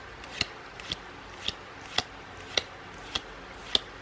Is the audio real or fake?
real